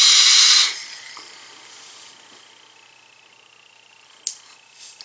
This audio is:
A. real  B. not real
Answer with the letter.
A